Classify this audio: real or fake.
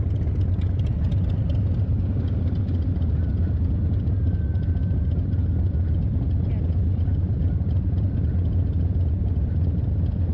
real